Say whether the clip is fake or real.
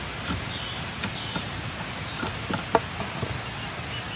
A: real